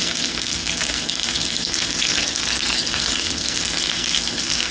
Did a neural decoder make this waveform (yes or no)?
yes